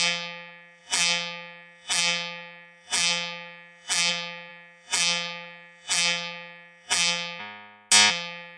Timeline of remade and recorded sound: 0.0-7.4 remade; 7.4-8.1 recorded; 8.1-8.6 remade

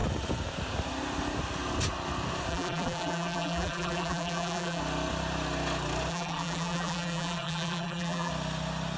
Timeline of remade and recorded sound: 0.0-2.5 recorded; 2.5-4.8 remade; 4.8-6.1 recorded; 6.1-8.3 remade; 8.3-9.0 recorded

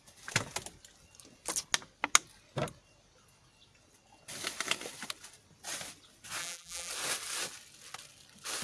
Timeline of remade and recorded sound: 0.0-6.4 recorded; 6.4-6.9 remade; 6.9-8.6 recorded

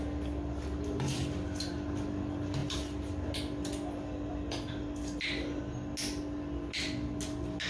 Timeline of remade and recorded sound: 0.0-7.7 recorded

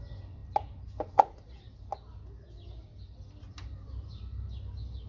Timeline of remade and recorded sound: 0.0-5.1 recorded